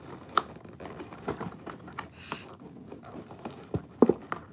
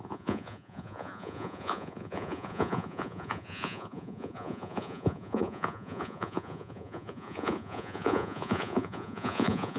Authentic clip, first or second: first